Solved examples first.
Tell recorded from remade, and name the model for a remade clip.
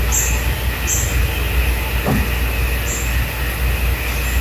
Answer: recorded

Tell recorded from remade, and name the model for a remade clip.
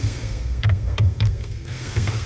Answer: remade, codec, SNAC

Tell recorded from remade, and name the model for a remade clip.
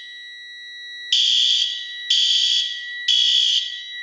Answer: recorded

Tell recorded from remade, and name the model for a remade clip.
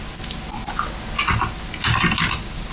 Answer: recorded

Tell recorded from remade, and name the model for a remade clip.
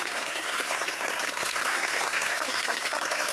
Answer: remade, codec, SNAC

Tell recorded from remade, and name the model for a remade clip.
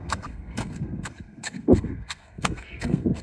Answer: remade, codec, SNAC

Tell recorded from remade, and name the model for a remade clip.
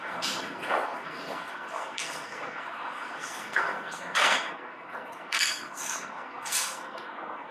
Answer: remade, codec, SNAC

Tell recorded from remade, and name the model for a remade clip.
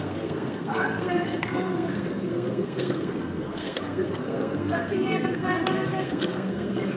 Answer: remade, codec, SNAC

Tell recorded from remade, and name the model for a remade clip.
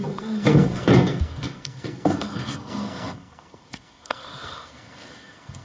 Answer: remade, codec, SNAC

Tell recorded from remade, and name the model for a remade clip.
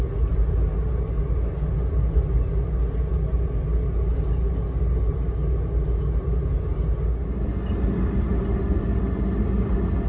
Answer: recorded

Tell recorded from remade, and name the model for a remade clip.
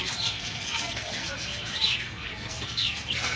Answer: remade, codec, SNAC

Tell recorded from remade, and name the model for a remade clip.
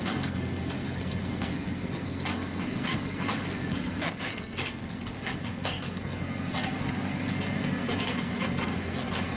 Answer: remade, codec, SNAC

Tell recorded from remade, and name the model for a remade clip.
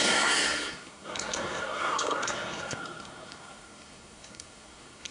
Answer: remade, codec, SNAC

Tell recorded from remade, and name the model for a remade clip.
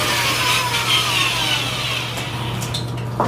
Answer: recorded